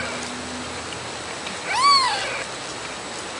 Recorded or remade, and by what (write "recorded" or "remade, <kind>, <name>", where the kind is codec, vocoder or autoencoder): recorded